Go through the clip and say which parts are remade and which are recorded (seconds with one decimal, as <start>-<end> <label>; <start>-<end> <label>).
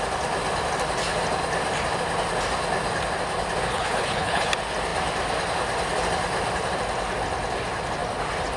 0.0-3.7 recorded; 3.7-4.5 remade; 4.5-8.6 recorded